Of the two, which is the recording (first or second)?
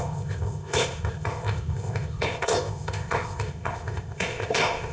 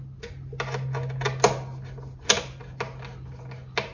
second